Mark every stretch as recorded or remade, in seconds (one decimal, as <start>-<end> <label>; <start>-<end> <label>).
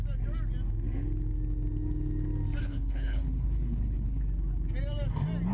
0.0-2.6 recorded; 2.6-4.2 remade; 4.2-5.5 recorded